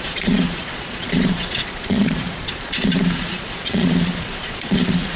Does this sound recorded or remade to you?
remade